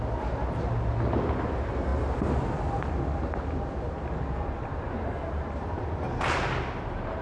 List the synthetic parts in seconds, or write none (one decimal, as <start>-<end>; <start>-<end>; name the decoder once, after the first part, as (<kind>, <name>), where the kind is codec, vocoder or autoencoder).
none